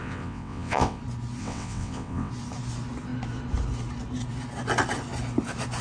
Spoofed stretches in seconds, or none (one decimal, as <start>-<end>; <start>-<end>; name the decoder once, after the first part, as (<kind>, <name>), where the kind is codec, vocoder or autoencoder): 0.0-1.0 (vocoder, WaveNeXt); 1.4-2.3